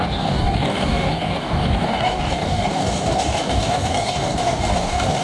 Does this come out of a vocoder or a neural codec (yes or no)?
yes